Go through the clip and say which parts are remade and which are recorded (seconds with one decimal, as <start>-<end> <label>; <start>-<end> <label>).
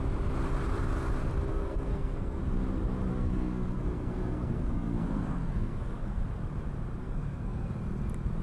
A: 0.0-1.5 recorded; 1.5-2.4 remade; 2.4-3.1 recorded; 3.1-6.2 remade; 6.2-7.0 recorded; 7.0-7.7 remade; 7.7-8.4 recorded